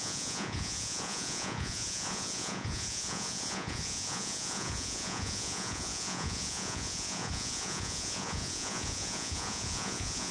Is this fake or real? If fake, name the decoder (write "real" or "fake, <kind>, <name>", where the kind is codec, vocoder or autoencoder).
fake, vocoder, Vocos